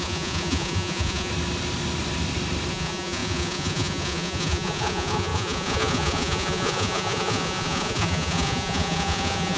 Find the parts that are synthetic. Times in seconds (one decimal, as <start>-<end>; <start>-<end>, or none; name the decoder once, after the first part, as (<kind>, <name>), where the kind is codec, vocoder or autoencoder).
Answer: 0.0-1.3 (vocoder, Vocos); 2.7-9.6